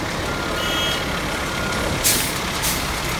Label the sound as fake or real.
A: real